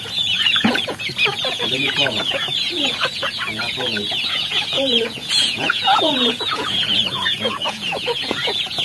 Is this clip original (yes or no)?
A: no